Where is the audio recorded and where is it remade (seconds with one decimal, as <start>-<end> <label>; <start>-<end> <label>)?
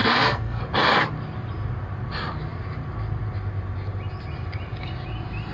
0.0-0.6 remade; 0.6-5.5 recorded